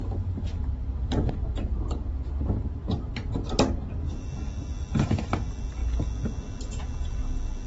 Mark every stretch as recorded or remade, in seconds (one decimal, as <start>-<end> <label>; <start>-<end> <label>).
0.0-7.7 recorded